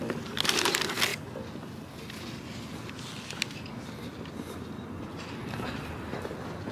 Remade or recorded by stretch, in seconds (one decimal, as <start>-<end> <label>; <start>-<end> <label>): 0.0-6.7 recorded